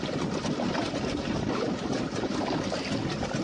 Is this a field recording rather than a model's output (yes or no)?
yes